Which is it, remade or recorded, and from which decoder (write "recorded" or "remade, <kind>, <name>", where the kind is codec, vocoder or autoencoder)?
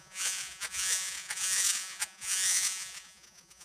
remade, vocoder, Vocos